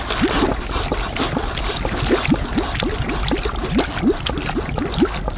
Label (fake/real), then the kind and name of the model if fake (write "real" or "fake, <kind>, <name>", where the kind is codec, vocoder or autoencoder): real